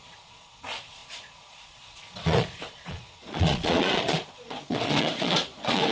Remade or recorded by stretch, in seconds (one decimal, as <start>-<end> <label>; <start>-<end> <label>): 0.0-5.9 remade